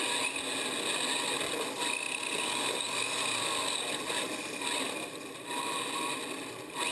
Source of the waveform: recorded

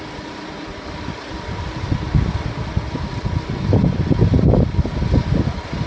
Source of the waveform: recorded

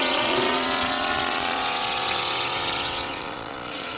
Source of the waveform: remade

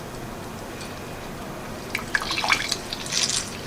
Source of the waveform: recorded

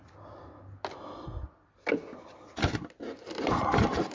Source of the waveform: recorded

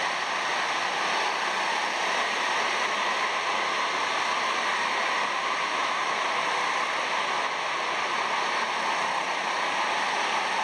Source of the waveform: recorded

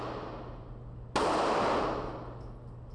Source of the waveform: recorded